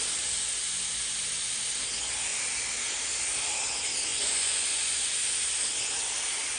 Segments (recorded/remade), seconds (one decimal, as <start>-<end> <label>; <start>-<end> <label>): 0.0-4.1 recorded; 4.1-5.1 remade; 5.1-6.6 recorded